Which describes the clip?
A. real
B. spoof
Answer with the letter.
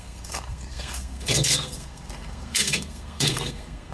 B